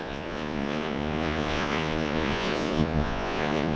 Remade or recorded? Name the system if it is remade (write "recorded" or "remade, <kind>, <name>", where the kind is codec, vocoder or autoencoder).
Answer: remade, vocoder, Vocos